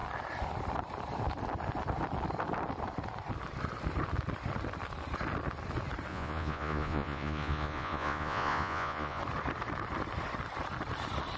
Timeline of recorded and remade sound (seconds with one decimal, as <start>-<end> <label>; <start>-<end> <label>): 0.0-6.1 recorded; 6.1-9.2 remade; 9.2-11.4 recorded